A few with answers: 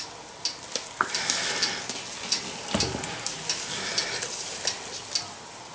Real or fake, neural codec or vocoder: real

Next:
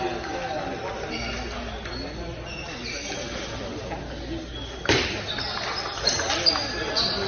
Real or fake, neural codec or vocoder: real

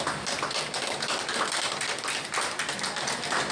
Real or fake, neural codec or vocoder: real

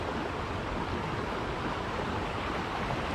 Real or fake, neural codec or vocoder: real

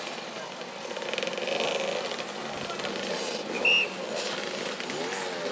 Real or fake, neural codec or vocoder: real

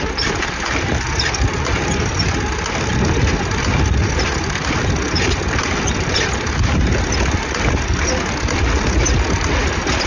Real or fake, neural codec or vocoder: real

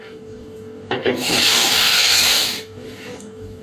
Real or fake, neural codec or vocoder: fake, codec, DAC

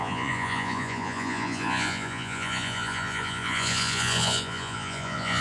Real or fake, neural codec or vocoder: fake, vocoder, Vocos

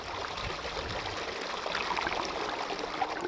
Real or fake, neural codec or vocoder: real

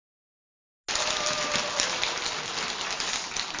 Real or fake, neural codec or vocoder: real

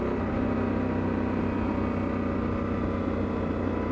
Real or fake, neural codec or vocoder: real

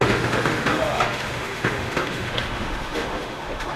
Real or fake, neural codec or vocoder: fake, autoencoder, DAC-VAE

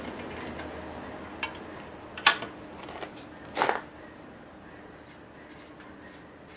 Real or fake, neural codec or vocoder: real